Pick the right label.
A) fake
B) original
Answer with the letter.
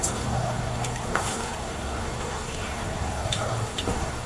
A